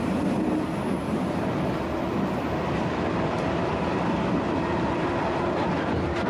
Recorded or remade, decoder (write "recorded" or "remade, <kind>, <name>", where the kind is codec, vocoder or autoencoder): recorded